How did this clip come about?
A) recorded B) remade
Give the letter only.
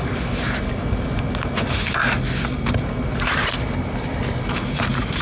A